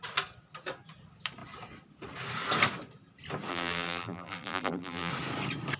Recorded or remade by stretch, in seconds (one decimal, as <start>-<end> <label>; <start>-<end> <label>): 0.0-3.5 recorded; 3.5-5.1 remade; 5.1-5.8 recorded